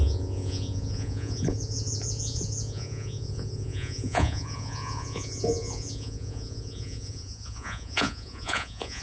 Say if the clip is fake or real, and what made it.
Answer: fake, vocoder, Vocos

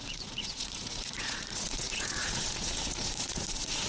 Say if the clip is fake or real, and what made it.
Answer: fake, vocoder, Vocos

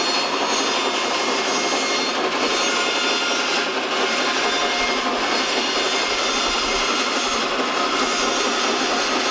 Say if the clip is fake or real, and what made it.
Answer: real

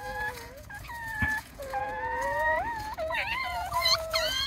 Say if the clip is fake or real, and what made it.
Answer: fake, vocoder, Vocos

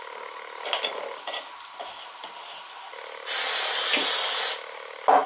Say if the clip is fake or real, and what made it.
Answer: real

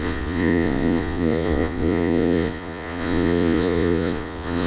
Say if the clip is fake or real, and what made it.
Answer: fake, vocoder, Vocos